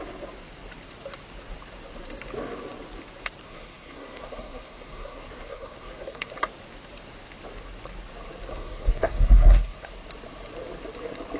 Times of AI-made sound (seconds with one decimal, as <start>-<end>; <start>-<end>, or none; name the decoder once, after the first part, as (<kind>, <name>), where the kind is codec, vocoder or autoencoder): 3.4-6.3 (codec, SNAC); 8.5-9.9